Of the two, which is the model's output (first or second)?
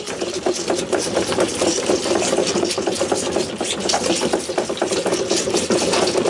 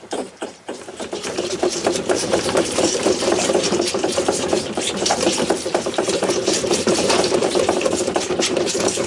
second